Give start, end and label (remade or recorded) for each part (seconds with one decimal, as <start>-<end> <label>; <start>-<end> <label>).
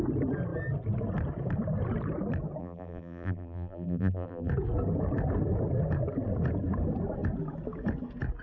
0.0-2.6 recorded; 2.6-4.5 remade; 4.5-8.4 recorded